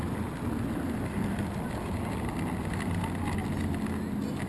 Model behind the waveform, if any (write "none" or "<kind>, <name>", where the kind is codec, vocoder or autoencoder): none